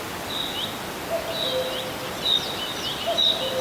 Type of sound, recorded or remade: recorded